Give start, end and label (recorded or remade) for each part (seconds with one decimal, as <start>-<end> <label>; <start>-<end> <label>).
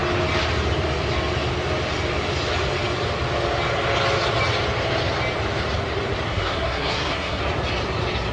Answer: 0.0-6.3 recorded; 6.3-7.4 remade; 7.4-8.3 recorded